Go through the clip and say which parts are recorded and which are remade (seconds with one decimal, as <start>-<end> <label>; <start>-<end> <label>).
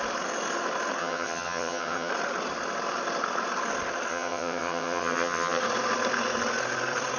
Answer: 0.0-1.0 recorded; 1.0-2.1 remade; 2.1-4.1 recorded; 4.1-5.6 remade; 5.6-7.2 recorded